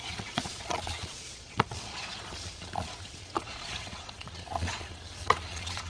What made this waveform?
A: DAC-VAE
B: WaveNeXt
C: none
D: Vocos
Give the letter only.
D